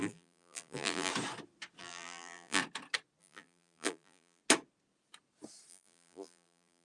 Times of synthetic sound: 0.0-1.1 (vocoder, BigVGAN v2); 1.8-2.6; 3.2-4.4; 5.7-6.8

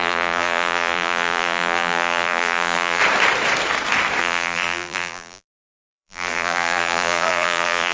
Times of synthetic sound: 0.0-3.0 (vocoder, BigVGAN v2); 4.2-7.9

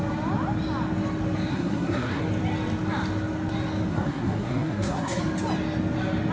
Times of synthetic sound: 1.5-2.2 (codec, SNAC); 3.9-5.2

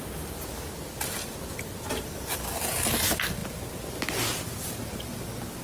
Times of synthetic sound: none

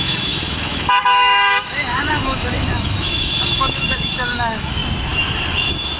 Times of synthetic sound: 0.0-4.8 (autoencoder, DAC-VAE); 5.5-6.0